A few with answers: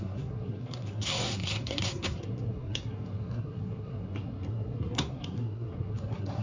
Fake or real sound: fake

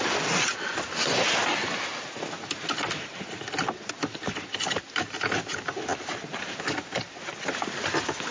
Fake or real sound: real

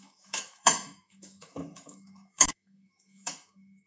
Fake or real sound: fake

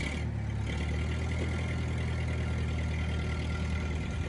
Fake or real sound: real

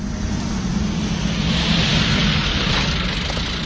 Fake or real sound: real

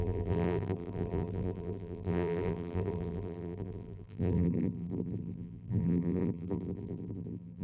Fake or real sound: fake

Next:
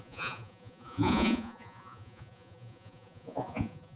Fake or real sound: fake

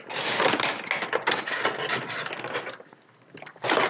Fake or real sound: real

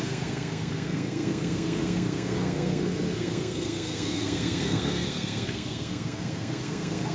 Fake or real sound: fake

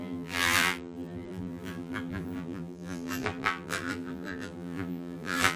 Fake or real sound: fake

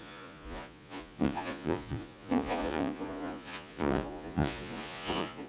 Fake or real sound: fake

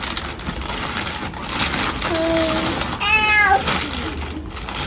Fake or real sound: real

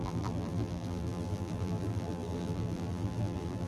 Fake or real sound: fake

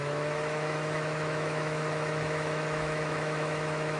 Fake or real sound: fake